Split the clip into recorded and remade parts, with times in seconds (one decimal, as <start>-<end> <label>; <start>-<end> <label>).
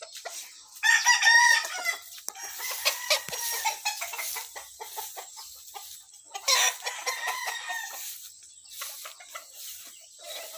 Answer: 0.0-10.6 recorded